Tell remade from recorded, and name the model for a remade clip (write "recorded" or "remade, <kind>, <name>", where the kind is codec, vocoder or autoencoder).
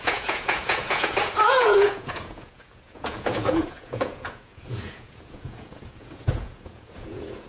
remade, vocoder, Vocos